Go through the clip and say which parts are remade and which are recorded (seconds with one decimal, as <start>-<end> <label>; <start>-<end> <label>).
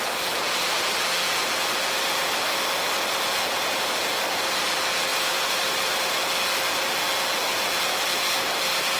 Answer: 0.0-5.1 recorded; 5.1-6.1 remade; 6.1-9.0 recorded